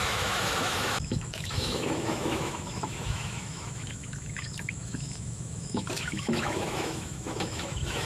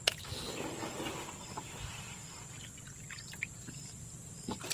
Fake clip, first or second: first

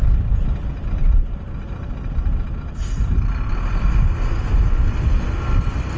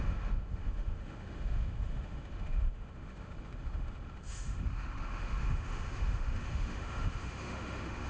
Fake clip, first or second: second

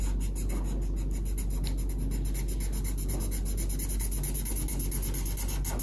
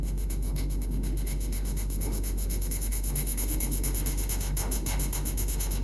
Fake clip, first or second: second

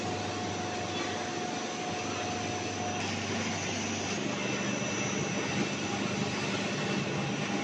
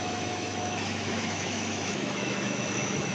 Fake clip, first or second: second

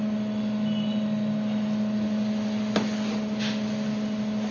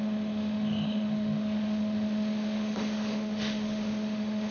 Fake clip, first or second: second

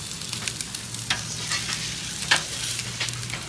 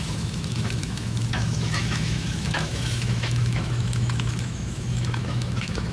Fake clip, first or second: second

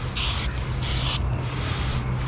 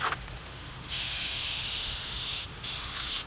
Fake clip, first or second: second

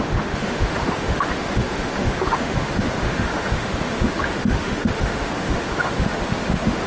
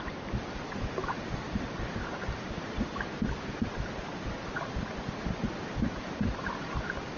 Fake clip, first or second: first